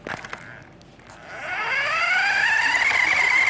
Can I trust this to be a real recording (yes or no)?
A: yes